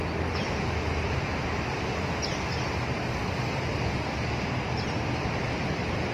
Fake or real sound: real